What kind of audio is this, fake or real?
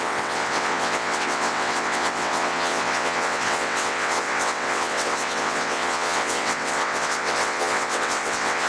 fake